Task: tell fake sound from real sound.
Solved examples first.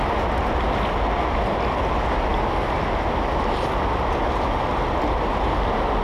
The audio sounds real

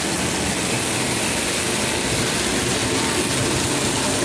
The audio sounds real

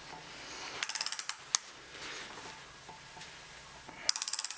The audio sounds real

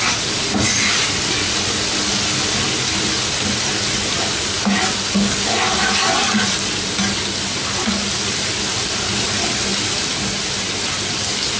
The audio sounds real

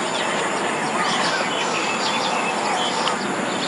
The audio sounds real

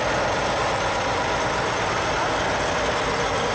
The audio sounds real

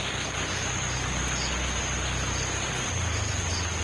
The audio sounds real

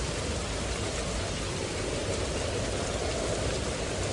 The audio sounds real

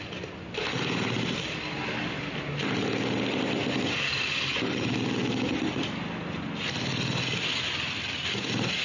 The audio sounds real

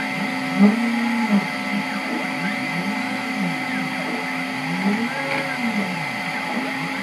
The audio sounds real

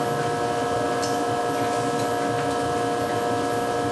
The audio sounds real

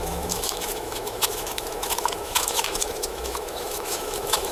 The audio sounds fake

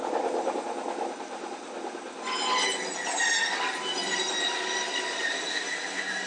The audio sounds real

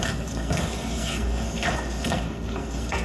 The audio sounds fake